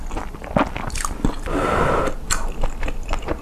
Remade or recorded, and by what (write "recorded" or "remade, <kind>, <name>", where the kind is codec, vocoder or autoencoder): recorded